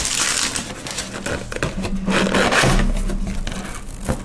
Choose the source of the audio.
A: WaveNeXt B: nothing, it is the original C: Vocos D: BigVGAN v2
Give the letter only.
B